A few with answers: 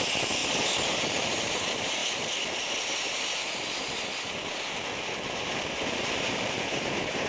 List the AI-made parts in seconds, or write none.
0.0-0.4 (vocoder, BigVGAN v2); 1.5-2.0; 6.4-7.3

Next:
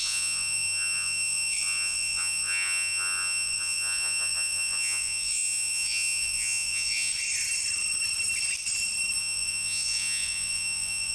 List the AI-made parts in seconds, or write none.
0.0-7.1 (vocoder, Vocos); 9.2-11.1

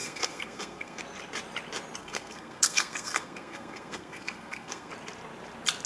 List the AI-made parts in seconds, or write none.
0.0-1.0 (codec, SNAC); 2.0-4.9

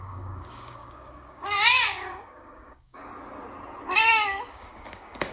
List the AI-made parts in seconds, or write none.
0.0-3.1 (codec, DAC); 4.5-5.3

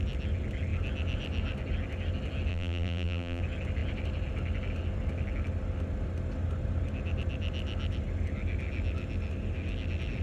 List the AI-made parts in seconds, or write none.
2.5-3.4 (vocoder, BigVGAN v2)

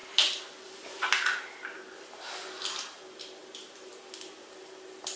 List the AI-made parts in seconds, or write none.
none

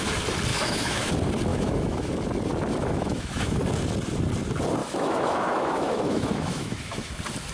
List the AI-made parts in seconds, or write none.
0.5-1.1 (autoencoder, DAC-VAE); 1.5-2.1; 2.8-3.6; 4.8-7.1

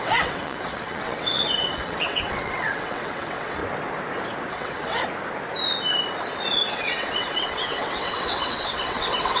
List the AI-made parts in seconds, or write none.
0.0-3.6 (vocoder, WaveNeXt); 4.5-5.0; 6.7-9.4